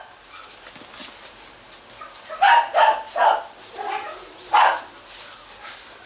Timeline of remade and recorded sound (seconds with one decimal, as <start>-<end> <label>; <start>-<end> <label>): 0.0-6.1 recorded